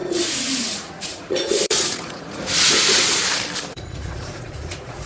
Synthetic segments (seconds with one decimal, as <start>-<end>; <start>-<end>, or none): 0.0-3.2; 3.7-5.1